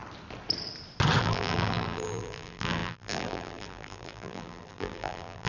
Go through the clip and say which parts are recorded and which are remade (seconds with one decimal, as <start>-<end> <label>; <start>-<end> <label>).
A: 0.0-1.2 recorded; 1.2-5.5 remade